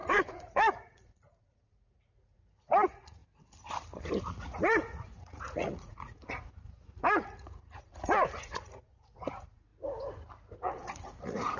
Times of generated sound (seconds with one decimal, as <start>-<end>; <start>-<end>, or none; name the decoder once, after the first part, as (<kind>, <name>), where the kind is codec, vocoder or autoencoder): 0.0-3.2 (vocoder, Vocos); 4.2-9.7; 10.6-11.6